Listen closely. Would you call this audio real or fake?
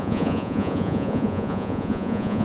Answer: fake